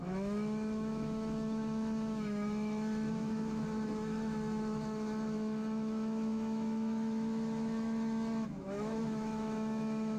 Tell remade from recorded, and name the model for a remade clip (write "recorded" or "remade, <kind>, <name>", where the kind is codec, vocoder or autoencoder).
remade, autoencoder, DAC-VAE